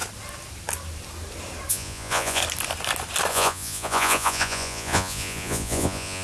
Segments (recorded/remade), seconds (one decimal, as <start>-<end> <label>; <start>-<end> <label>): 0.0-1.7 recorded; 1.7-2.4 remade; 2.4-3.3 recorded; 3.3-6.2 remade